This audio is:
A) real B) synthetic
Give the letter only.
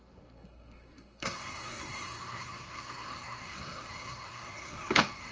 B